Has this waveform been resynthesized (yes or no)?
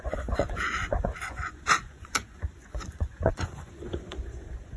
yes